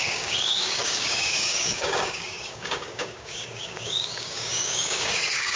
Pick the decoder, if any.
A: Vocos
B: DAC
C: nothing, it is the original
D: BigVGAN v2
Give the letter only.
B